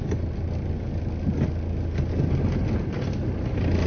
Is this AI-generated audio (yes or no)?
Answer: no